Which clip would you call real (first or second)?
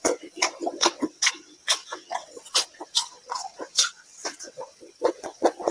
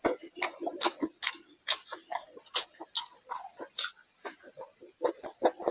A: second